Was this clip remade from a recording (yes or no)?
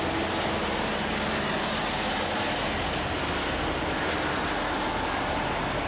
no